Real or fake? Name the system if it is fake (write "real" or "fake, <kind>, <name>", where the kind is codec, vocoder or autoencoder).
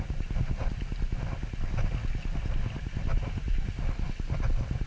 real